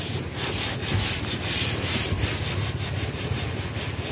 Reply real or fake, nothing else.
real